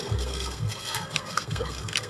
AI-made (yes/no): yes